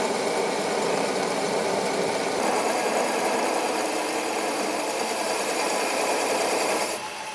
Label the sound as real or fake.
fake